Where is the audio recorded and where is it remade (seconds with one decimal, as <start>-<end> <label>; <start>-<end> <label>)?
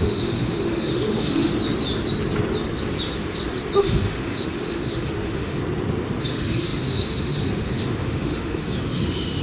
0.0-1.5 remade; 1.5-3.8 recorded; 3.8-5.6 remade; 5.6-6.2 recorded; 6.2-9.4 remade